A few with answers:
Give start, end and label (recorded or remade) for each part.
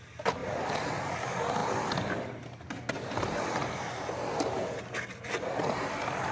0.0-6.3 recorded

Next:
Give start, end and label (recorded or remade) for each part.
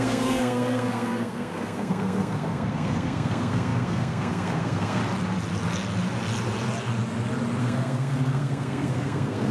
0.0-5.0 remade; 5.0-7.6 recorded; 7.6-9.5 remade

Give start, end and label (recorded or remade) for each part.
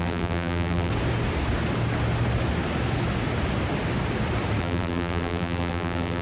0.0-0.9 remade; 0.9-4.6 recorded; 4.6-6.2 remade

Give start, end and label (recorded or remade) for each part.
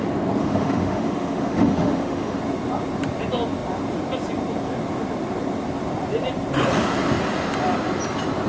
0.0-0.4 recorded; 0.4-2.4 remade; 2.4-8.5 recorded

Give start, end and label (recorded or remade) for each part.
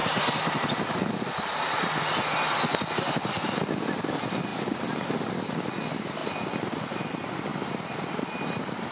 0.0-4.5 recorded; 4.5-5.2 remade; 5.2-6.2 recorded; 6.2-7.1 remade; 7.1-8.9 recorded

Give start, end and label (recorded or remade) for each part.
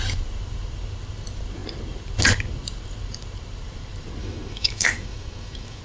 0.0-4.2 recorded; 4.2-5.8 remade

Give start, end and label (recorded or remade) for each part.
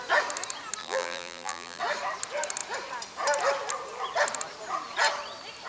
0.0-0.8 recorded; 0.8-1.8 remade; 1.8-5.7 recorded